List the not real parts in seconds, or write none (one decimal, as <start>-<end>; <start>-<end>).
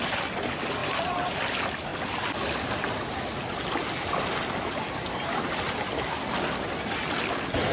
0.8-1.4